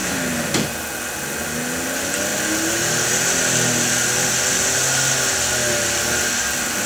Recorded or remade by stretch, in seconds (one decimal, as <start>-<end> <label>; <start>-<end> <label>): 0.0-6.9 recorded